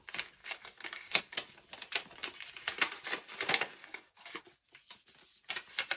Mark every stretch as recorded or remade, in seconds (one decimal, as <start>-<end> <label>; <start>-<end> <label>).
0.0-0.4 recorded; 0.4-1.2 remade; 1.2-3.8 recorded; 3.8-4.4 remade; 4.4-6.0 recorded

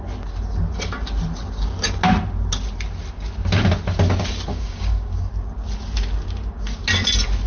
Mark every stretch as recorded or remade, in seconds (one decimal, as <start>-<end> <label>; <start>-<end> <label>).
0.0-4.5 recorded; 4.5-5.3 remade; 5.3-7.5 recorded

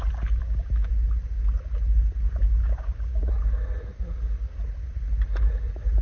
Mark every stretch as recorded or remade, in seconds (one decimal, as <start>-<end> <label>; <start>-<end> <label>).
0.0-0.4 recorded; 0.4-0.9 remade; 0.9-2.6 recorded; 2.6-3.3 remade; 3.3-6.0 recorded

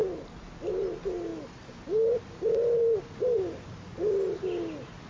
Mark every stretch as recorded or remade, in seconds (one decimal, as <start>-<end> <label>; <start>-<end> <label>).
0.0-5.1 recorded

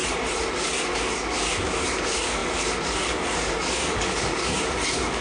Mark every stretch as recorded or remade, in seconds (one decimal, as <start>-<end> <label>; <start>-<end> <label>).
0.0-0.5 recorded; 0.5-5.2 remade

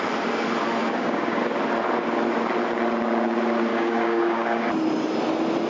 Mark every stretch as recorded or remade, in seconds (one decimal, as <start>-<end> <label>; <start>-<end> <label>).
0.0-0.8 recorded; 0.8-1.4 remade; 1.4-3.7 recorded; 3.7-4.7 remade; 4.7-5.7 recorded